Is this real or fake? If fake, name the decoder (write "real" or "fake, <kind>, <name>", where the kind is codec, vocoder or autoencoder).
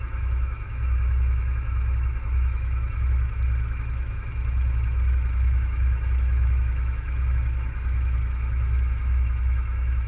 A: fake, autoencoder, DAC-VAE